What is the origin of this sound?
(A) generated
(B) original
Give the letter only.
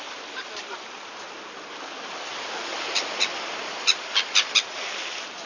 B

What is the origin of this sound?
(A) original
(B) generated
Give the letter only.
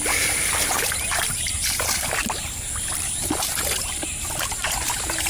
B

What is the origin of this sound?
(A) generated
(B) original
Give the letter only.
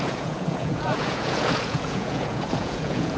A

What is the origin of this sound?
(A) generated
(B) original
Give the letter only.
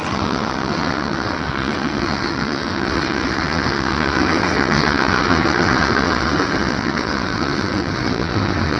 A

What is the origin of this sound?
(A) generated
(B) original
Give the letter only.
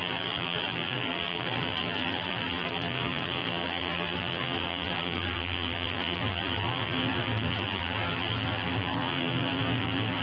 A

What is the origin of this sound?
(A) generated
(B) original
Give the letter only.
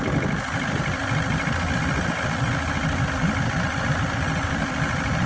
B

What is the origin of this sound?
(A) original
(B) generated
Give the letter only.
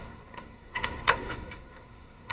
B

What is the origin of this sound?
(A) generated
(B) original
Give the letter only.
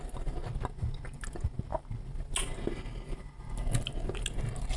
B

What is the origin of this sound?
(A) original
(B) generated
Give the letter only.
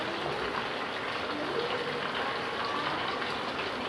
A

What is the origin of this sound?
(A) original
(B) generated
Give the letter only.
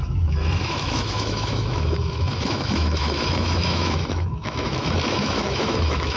B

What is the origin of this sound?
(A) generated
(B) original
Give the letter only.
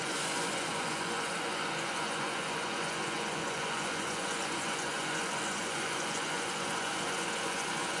A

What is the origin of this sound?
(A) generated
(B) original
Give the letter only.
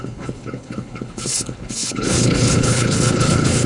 A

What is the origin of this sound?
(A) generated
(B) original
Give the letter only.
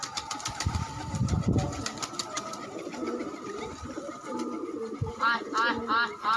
A